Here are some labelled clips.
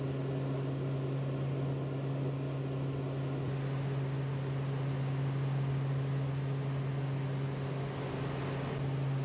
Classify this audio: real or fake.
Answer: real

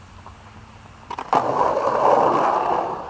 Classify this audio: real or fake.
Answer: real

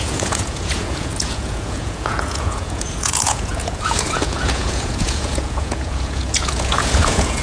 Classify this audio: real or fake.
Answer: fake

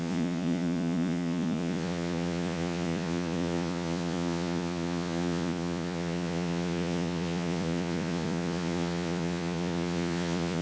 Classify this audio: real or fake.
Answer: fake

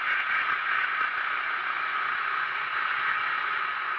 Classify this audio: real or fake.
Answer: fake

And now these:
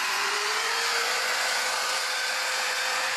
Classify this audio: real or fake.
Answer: fake